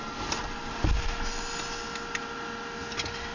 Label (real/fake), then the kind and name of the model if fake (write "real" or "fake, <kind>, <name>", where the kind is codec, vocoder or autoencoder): real